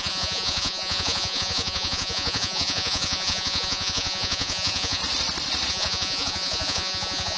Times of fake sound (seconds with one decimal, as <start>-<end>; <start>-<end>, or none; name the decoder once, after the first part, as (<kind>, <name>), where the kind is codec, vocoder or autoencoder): 0.0-5.0 (vocoder, Vocos); 5.7-7.4